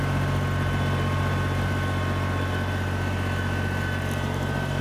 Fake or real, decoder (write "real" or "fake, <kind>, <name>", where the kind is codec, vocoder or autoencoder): real